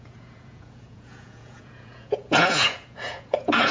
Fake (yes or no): yes